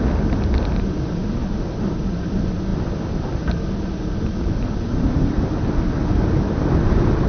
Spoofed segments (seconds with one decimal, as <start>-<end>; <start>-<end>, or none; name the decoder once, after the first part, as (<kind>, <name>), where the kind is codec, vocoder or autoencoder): 1.4-2.3 (vocoder, BigVGAN v2)